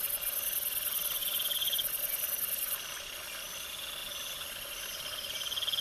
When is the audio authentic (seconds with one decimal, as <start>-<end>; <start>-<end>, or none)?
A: 0.0-5.8